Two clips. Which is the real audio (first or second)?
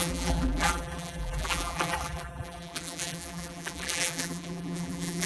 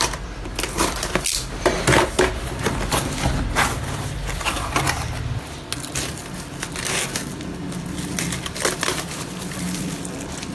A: second